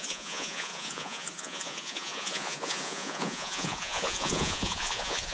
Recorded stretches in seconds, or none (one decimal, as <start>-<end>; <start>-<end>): none